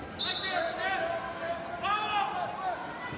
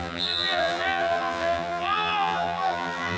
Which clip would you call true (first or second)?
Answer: first